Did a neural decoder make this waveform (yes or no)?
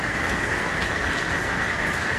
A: yes